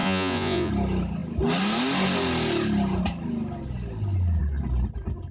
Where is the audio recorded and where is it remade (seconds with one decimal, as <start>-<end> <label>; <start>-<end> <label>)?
0.0-0.7 remade; 0.7-5.3 recorded